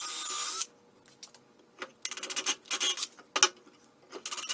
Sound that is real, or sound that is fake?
real